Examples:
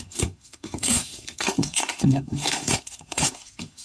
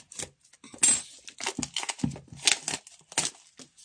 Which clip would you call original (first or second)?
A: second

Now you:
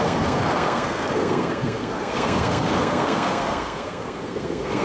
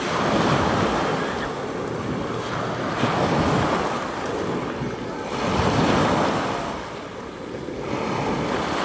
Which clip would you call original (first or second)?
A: second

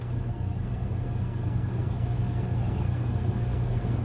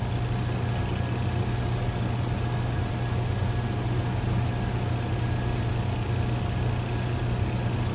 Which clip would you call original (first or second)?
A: second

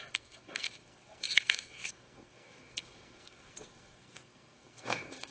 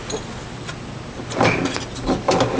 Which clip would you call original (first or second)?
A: second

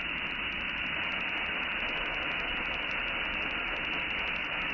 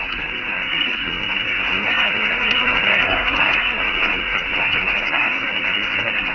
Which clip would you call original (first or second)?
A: first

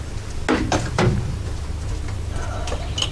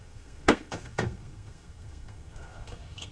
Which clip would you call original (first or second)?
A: first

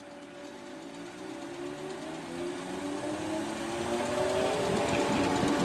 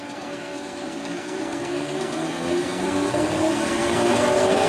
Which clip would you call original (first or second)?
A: first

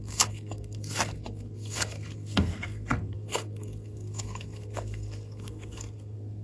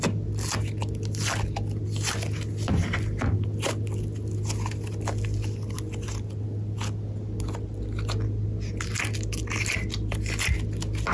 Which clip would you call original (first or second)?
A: second